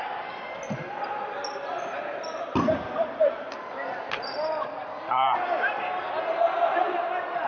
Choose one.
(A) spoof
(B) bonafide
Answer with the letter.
B